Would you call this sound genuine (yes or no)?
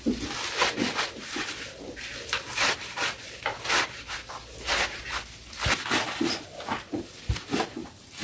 yes